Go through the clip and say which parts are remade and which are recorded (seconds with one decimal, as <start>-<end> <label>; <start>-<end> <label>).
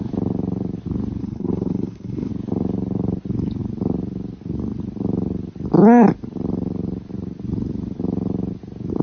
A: 0.0-1.2 recorded; 1.2-2.3 remade; 2.3-9.0 recorded